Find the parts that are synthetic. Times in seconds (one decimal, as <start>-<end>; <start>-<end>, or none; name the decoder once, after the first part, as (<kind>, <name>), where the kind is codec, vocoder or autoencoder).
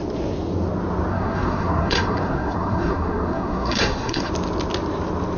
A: 1.1-4.3 (codec, SNAC)